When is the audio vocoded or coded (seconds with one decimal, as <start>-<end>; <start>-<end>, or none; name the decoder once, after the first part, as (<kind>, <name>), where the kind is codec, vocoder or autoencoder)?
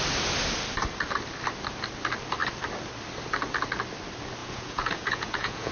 4.4-5.7 (vocoder, Vocos)